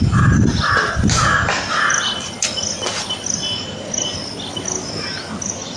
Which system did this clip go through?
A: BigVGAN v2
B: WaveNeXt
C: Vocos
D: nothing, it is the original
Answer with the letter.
D